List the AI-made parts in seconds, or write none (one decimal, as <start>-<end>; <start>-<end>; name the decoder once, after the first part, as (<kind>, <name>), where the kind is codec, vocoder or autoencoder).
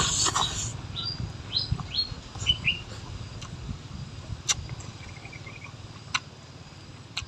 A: none